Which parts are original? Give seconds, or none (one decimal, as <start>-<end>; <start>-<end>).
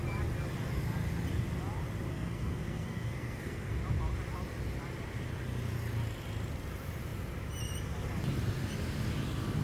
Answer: 0.0-2.1; 3.8-9.6